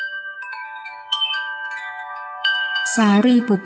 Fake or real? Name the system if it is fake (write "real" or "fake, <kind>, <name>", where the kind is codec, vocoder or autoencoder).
fake, codec, SNAC